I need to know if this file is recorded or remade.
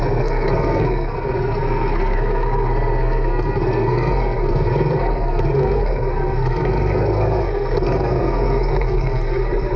remade